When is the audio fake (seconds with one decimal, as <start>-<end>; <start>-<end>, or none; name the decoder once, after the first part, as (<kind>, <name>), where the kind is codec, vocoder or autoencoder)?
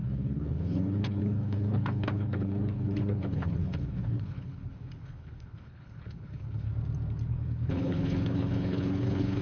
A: 0.0-6.7 (codec, HILCodec); 7.3-9.4